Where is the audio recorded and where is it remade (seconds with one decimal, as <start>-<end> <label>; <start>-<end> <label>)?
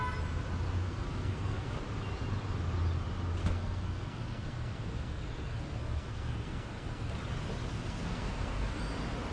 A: 0.0-0.8 recorded; 0.8-1.8 remade; 1.8-3.4 recorded; 3.4-7.1 remade; 7.1-7.7 recorded; 7.7-8.8 remade; 8.8-9.3 recorded